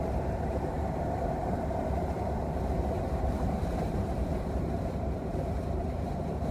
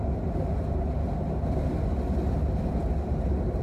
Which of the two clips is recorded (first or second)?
second